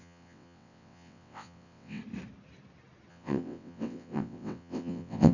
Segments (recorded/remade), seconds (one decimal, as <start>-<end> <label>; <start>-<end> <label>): 0.0-2.0 remade; 2.0-3.1 recorded; 3.1-5.3 remade